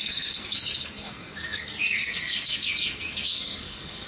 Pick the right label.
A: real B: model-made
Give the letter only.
B